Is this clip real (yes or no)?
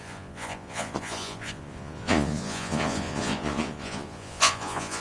no